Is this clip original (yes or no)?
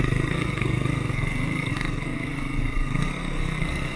no